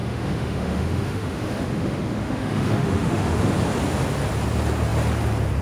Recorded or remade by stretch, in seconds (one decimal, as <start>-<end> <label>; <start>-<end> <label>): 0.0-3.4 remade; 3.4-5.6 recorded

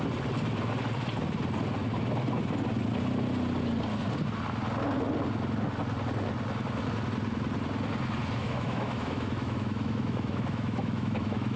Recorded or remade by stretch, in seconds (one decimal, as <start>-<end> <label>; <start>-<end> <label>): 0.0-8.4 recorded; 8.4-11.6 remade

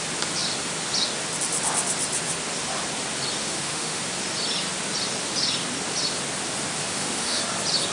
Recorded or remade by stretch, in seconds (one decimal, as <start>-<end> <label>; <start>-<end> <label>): 0.0-3.4 recorded; 3.4-4.0 remade; 4.0-6.8 recorded; 6.8-7.4 remade; 7.4-7.9 recorded